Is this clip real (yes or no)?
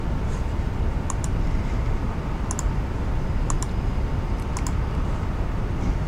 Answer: yes